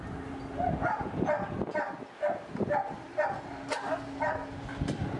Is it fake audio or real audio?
real